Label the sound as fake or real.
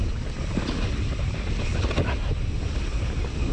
real